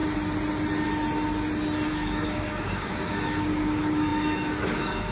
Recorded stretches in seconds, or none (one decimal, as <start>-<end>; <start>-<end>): 0.0-1.9